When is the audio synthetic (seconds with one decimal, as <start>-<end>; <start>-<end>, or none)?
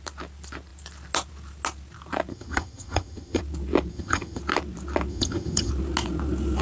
2.3-3.4; 3.9-4.4; 5.1-5.7